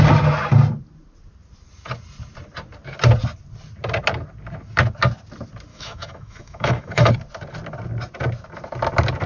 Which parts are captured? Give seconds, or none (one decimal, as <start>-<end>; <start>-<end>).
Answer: 0.0-5.7; 7.1-9.3